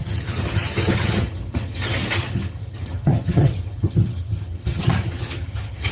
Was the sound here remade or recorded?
remade